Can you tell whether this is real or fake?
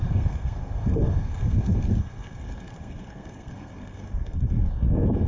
fake